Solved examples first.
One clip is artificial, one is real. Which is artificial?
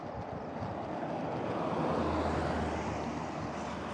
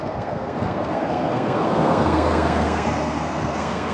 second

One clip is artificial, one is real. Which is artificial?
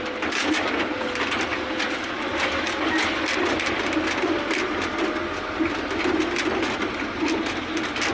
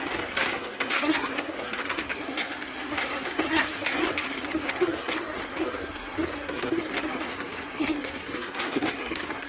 second